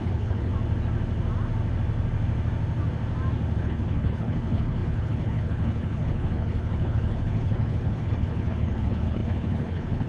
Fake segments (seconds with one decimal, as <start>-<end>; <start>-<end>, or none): 0.0-0.5; 3.6-10.1

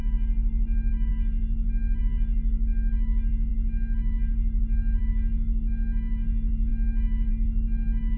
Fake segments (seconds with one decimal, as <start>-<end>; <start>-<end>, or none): none

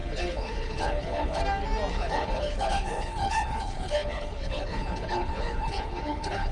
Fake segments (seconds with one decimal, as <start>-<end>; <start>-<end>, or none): 0.0-1.4; 1.9-6.5

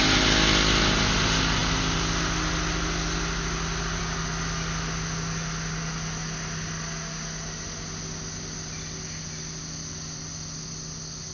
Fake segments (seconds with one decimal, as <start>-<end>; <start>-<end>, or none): none